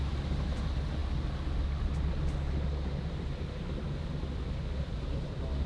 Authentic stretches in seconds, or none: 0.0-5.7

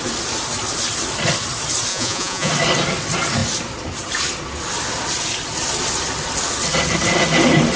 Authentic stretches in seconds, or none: 0.0-1.9; 2.5-7.8

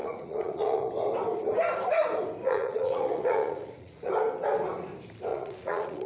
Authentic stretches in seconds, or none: 0.9-2.4; 4.1-5.3

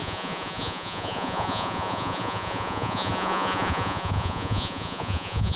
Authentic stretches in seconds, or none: none

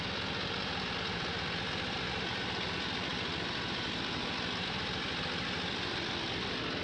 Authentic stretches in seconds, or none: 0.0-6.8

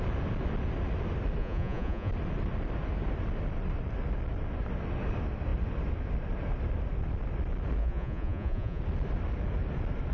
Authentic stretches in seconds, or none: 0.0-1.4; 2.1-7.8; 8.8-10.1

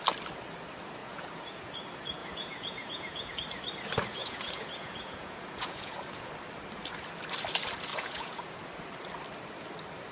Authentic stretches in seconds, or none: 0.0-1.0; 1.7-2.2; 3.3-4.2; 6.3-7.9; 8.6-10.1